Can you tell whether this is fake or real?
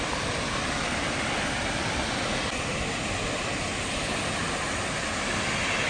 real